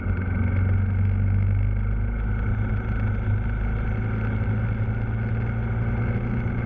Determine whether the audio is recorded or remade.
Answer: recorded